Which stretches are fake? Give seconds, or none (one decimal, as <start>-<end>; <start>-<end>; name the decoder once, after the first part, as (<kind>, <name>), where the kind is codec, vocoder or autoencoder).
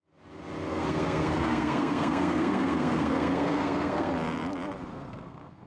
0.7-4.1 (codec, SNAC); 4.9-5.7